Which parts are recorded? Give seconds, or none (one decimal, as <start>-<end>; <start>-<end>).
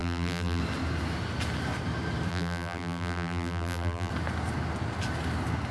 0.6-2.3; 4.1-5.7